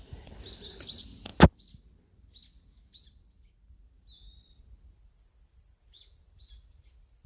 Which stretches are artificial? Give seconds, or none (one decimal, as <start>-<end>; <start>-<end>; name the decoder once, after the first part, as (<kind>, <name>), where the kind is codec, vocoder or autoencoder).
0.0-1.3 (vocoder, BigVGAN v2); 5.5-7.3